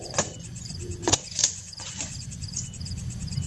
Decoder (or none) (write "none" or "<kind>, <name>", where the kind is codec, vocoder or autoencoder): vocoder, Vocos